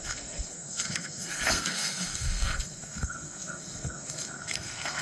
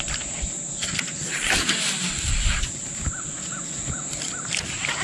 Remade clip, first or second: first